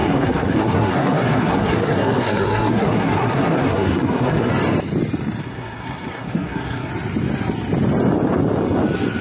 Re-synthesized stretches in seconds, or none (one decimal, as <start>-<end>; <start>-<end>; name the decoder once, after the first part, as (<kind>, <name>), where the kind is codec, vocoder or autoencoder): 0.0-4.5 (codec, SNAC); 5.4-6.9